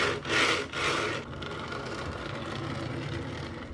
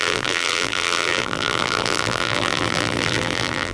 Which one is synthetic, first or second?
second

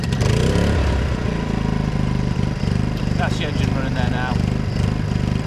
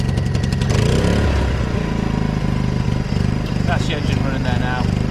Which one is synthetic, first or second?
first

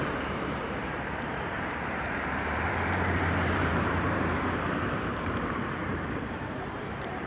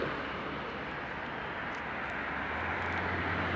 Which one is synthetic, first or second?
first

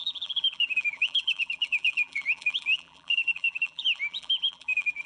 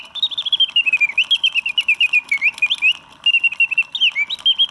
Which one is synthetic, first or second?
first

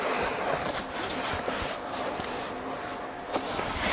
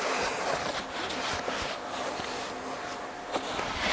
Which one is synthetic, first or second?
first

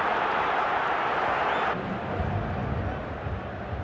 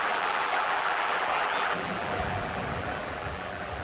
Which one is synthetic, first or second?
second